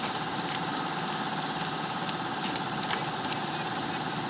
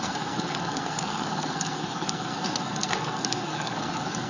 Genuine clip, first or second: first